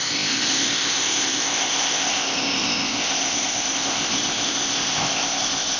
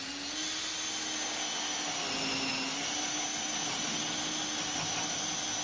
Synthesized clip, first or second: first